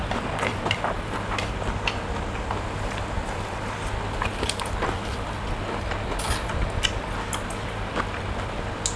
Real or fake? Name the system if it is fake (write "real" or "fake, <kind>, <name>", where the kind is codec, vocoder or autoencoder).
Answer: real